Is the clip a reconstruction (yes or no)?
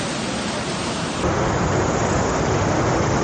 no